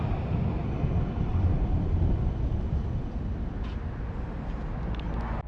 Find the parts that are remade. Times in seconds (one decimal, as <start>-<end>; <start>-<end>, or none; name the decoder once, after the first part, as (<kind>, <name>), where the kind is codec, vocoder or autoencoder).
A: none